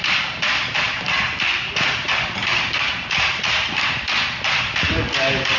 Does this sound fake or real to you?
real